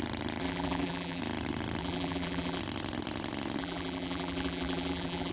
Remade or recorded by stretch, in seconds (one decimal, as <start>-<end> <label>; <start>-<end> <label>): 0.0-0.4 recorded; 0.4-1.2 remade; 1.2-1.8 recorded; 1.8-2.6 remade; 2.6-3.6 recorded; 3.6-5.3 remade